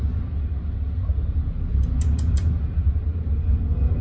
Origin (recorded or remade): recorded